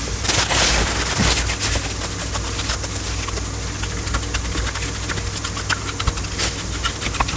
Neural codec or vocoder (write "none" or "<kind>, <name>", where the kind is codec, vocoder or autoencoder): none